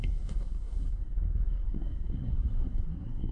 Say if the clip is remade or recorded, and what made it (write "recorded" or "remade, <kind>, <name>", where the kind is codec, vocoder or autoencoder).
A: remade, codec, SNAC